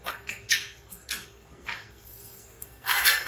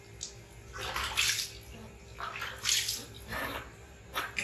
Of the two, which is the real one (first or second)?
second